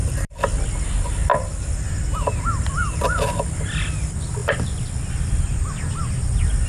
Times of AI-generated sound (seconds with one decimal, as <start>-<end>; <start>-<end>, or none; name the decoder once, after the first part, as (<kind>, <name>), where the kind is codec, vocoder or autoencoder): 0.0-0.7 (vocoder, BigVGAN v2); 1.3-2.0; 4.4-5.2